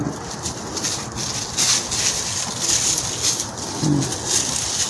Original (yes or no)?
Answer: yes